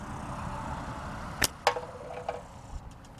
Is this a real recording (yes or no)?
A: yes